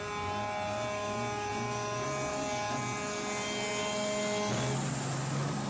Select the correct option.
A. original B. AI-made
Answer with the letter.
A